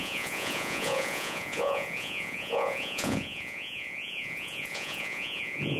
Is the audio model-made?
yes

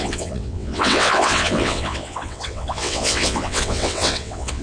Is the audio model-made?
yes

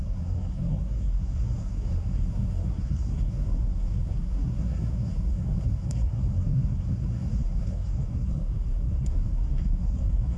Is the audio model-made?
yes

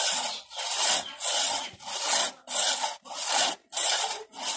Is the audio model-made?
no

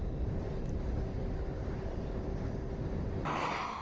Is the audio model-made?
no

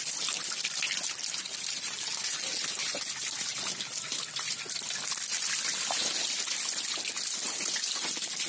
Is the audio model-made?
no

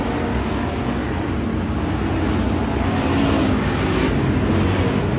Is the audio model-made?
no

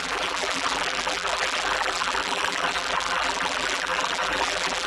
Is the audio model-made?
yes